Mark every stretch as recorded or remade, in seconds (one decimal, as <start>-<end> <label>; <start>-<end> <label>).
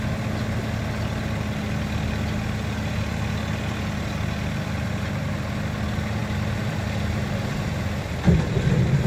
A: 0.0-9.1 recorded